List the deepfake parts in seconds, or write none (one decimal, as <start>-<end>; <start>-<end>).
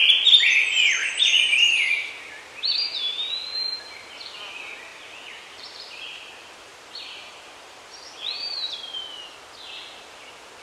1.0-2.1; 4.9-8.1